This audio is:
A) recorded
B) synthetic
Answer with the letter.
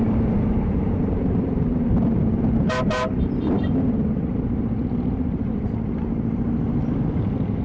B